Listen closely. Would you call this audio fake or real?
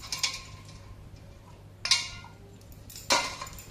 real